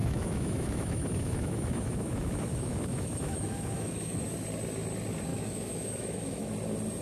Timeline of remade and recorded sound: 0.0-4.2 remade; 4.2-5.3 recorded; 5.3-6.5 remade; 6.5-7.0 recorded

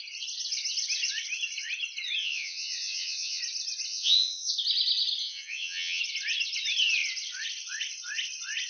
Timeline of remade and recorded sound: 0.0-2.2 recorded; 2.2-3.4 remade; 3.4-3.9 recorded; 3.9-4.5 remade; 4.5-5.2 recorded; 5.2-6.0 remade; 6.0-8.7 recorded

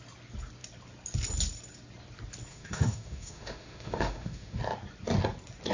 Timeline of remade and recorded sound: 0.0-2.5 recorded; 2.5-4.6 remade; 4.6-5.7 recorded

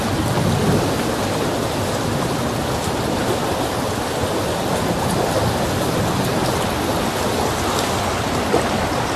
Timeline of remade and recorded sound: 0.0-9.2 recorded